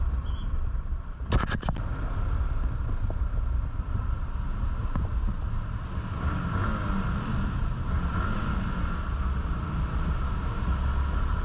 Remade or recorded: recorded